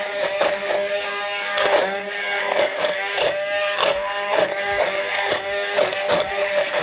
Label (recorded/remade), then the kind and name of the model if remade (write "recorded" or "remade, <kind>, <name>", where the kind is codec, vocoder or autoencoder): remade, codec, DAC